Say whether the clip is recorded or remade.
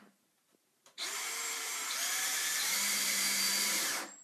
remade